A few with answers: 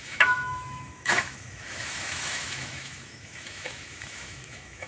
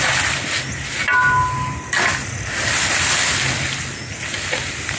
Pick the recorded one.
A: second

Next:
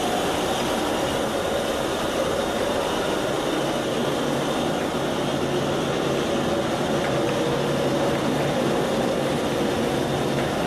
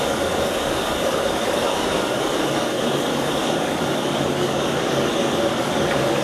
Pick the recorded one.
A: first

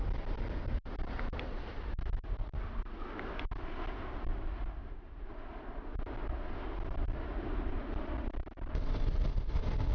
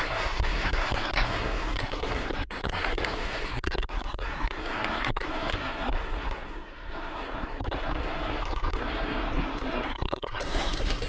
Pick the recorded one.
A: first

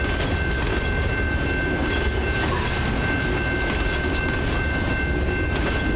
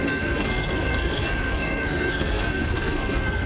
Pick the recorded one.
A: first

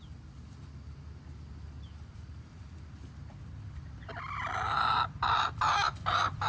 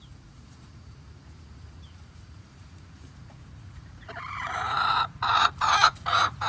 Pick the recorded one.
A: first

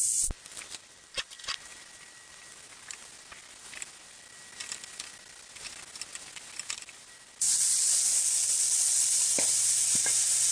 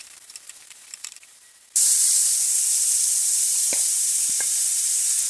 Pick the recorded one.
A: first